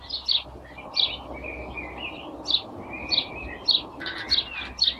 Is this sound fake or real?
real